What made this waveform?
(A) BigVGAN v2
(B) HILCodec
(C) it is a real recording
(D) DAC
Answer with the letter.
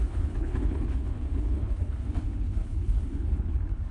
B